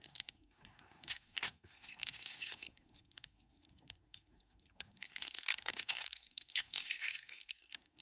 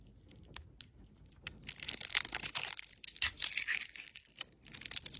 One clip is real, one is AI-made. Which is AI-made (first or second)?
first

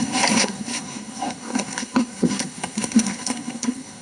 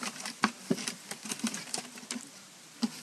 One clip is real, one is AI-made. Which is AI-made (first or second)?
first